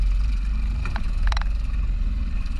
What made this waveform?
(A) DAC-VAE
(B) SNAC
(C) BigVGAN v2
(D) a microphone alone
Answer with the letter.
C